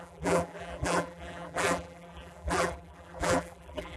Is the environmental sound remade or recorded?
remade